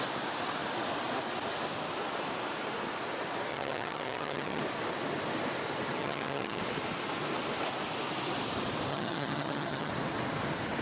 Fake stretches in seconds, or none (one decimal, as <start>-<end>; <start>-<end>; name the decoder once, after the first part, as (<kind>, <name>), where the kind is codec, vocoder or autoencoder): 3.5-4.6 (vocoder, HiFi-GAN); 6.0-6.6; 8.9-9.9